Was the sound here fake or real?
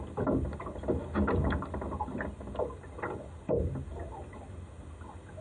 real